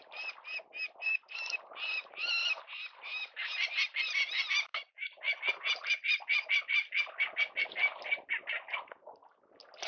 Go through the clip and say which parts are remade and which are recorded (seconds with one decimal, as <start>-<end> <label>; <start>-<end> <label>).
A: 0.0-9.9 recorded